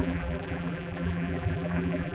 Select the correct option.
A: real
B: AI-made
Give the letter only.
B